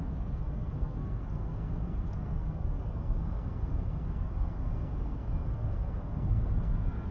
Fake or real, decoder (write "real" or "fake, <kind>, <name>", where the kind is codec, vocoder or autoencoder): fake, codec, SNAC